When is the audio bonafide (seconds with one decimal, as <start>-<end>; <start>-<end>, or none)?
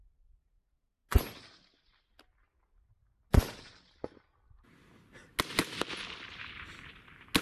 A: 0.0-7.4